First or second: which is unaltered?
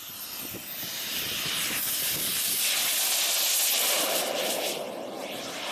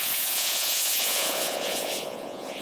first